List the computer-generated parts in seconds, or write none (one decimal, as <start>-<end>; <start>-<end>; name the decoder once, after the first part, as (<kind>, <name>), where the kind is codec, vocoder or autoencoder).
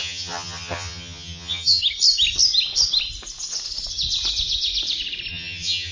0.0-1.8 (vocoder, HiFi-GAN); 5.3-5.9